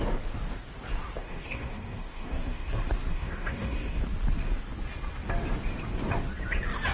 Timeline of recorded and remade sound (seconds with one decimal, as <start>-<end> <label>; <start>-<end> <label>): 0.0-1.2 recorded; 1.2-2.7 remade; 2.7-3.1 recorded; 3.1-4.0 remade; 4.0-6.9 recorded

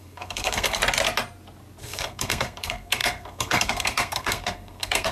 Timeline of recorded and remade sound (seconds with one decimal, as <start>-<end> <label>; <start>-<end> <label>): 0.0-0.8 remade; 0.8-1.8 recorded; 1.8-5.1 remade

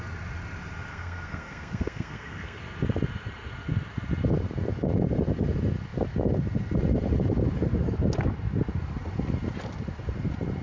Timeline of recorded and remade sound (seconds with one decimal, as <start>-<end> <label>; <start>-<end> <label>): 0.0-0.9 recorded; 0.9-2.6 remade; 2.6-10.6 recorded